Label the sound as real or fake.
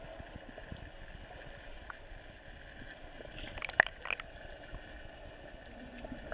real